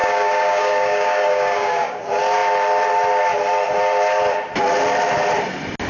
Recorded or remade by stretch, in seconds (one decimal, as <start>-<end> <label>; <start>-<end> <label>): 0.0-2.0 remade; 2.0-5.9 recorded